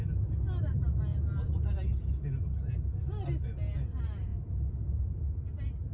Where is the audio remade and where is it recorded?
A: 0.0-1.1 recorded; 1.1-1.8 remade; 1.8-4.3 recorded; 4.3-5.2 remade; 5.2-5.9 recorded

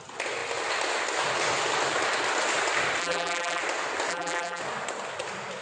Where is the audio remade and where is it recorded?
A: 0.0-3.0 recorded; 3.0-3.6 remade; 3.6-4.1 recorded; 4.1-4.6 remade; 4.6-5.6 recorded

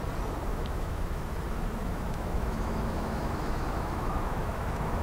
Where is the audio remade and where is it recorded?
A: 0.0-0.5 recorded; 0.5-1.2 remade; 1.2-1.8 recorded; 1.8-5.0 remade

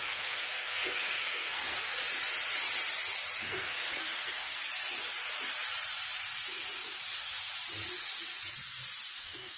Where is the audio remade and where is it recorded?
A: 0.0-2.0 remade; 2.0-3.4 recorded; 3.4-4.6 remade; 4.6-9.2 recorded; 9.2-9.6 remade